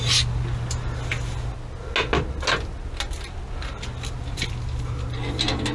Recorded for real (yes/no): yes